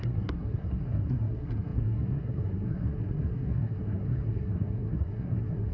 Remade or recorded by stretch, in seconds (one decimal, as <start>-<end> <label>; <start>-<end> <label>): 0.0-5.7 remade